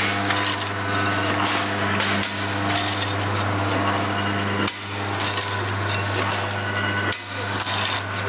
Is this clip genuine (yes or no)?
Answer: yes